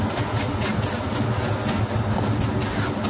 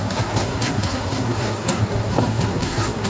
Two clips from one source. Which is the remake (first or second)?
second